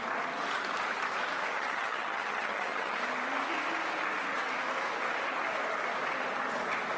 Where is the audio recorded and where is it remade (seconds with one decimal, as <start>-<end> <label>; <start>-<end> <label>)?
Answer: 0.0-1.5 recorded; 1.5-3.0 remade; 3.0-7.0 recorded